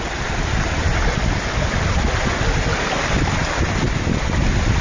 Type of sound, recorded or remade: recorded